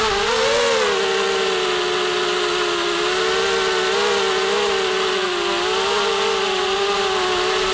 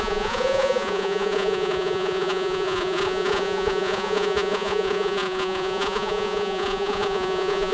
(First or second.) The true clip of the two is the first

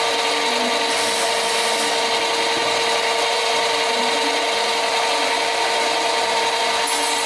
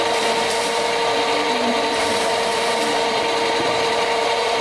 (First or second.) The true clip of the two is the first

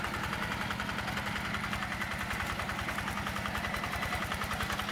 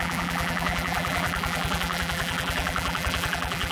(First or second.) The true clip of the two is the first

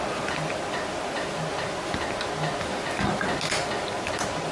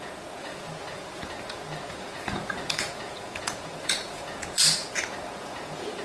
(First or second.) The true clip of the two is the first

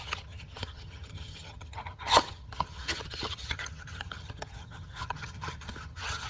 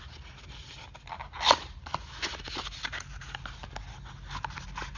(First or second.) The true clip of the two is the second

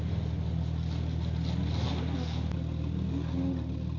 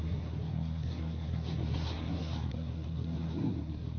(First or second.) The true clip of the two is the first